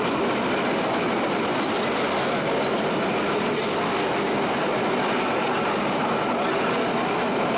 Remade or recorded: recorded